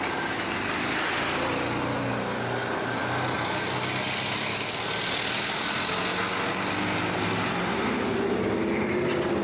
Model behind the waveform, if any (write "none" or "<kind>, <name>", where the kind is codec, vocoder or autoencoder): none